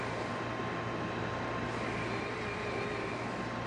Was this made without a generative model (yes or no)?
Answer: yes